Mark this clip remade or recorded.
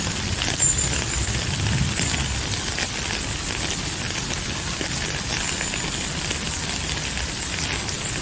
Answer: recorded